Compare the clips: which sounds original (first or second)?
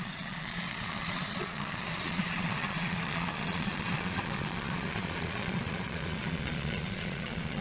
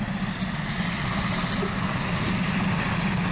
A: second